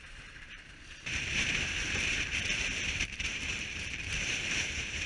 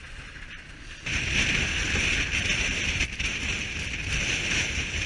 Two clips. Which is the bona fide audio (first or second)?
second